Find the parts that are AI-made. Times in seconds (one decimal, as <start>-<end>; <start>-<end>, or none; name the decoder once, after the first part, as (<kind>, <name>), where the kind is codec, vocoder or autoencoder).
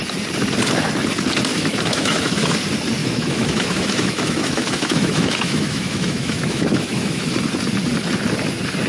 1.5-2.5 (autoencoder, DAC-VAE); 3.0-7.3